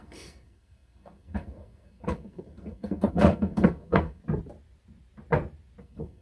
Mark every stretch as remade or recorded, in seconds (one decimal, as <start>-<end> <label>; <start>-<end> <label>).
0.0-4.2 remade; 4.2-5.8 recorded; 5.8-6.2 remade